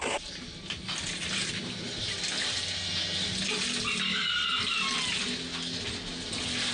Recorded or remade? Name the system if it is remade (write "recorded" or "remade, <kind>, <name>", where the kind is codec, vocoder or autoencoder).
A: recorded